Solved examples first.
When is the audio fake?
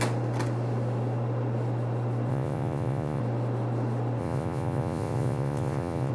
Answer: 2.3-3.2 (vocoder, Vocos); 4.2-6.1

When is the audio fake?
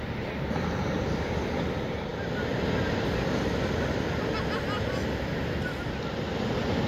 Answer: none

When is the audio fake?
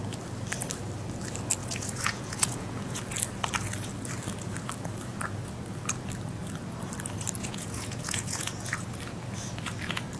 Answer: 1.6-3.0 (vocoder, Vocos); 7.4-8.9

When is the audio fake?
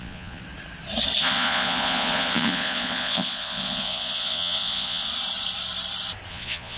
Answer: 0.0-0.4 (vocoder, Vocos); 1.2-5.1; 6.3-6.8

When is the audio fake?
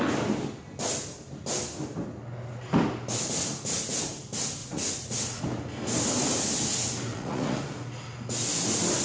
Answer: 4.6-5.4 (vocoder, Vocos); 7.1-7.6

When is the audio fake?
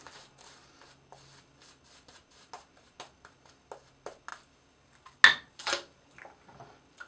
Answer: none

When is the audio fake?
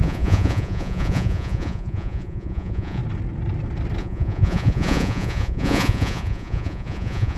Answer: 0.0-3.0 (vocoder, Vocos); 4.0-7.4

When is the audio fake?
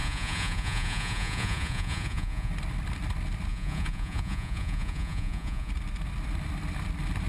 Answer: 0.0-2.5 (vocoder, Vocos); 3.5-5.7